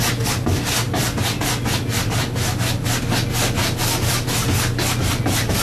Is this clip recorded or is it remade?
recorded